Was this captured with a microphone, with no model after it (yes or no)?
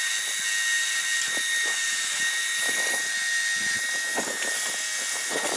yes